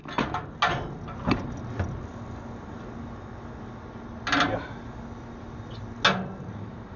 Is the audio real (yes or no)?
yes